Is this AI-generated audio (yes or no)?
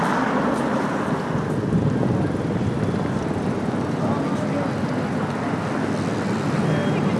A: no